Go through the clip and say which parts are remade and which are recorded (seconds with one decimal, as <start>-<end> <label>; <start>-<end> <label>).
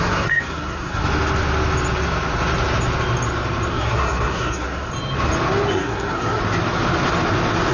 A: 0.0-1.0 remade; 1.0-3.7 recorded; 3.7-4.9 remade; 4.9-5.7 recorded; 5.7-6.4 remade; 6.4-7.7 recorded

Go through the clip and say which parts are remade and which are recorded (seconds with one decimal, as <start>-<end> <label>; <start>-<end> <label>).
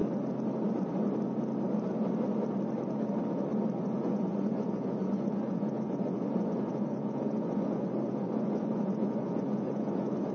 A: 0.0-3.8 recorded; 3.8-10.3 remade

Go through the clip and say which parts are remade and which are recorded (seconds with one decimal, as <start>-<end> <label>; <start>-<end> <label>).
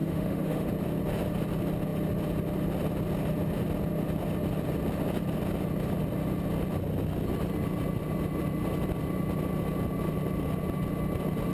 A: 0.0-0.7 remade; 0.7-11.5 recorded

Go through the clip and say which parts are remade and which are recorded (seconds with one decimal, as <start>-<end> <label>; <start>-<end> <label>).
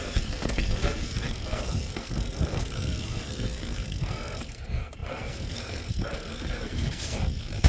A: 0.0-7.7 remade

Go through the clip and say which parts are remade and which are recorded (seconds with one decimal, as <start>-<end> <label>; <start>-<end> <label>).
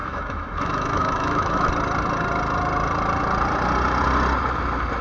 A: 0.0-1.7 remade; 1.7-5.0 recorded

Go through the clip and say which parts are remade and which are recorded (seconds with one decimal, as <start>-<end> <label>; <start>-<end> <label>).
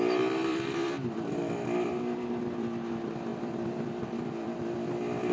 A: 0.0-0.5 recorded; 0.5-2.4 remade; 2.4-3.3 recorded; 3.3-4.6 remade; 4.6-5.3 recorded